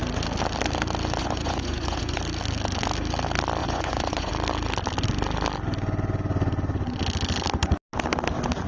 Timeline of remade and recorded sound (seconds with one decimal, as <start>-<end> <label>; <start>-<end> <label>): 0.0-1.2 recorded; 1.2-2.2 remade; 2.2-3.6 recorded; 3.6-4.3 remade; 4.3-8.7 recorded